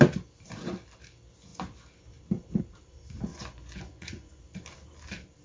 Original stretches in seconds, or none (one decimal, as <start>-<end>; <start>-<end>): 0.0-3.3; 4.4-5.4